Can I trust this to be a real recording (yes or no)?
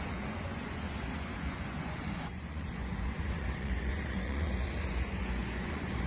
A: no